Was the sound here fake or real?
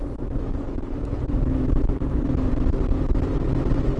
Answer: fake